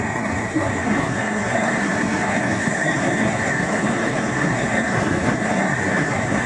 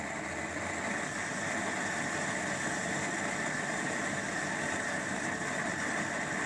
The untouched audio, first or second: second